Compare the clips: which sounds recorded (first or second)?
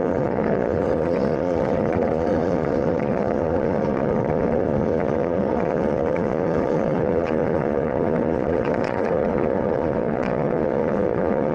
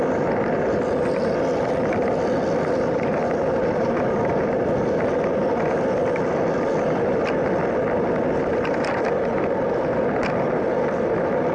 second